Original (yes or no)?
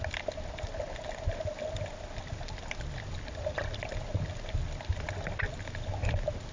yes